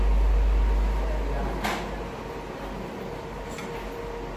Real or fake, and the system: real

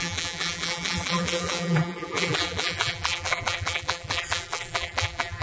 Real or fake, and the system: fake, vocoder, BigVGAN v2